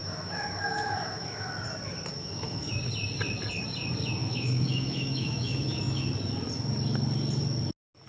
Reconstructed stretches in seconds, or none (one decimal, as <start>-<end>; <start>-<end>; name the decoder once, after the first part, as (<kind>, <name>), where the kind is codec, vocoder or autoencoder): 0.0-1.5 (autoencoder, DAC-VAE); 2.1-2.7; 4.2-6.0